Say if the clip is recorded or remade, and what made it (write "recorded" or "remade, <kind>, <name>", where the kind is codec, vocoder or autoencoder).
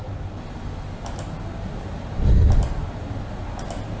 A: recorded